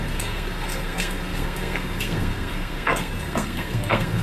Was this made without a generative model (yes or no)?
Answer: no